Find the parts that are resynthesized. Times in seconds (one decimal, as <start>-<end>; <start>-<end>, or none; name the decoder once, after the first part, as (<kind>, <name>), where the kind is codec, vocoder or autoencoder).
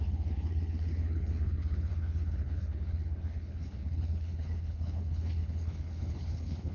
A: 0.0-6.7 (codec, HILCodec)